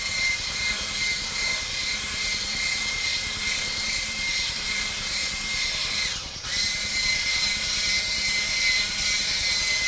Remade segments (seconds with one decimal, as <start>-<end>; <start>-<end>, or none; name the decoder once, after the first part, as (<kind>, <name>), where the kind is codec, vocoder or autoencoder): 0.0-5.2 (vocoder, BigVGAN v2); 6.6-9.9